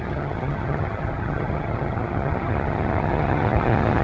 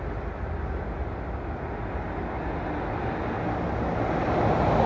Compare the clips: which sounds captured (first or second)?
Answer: second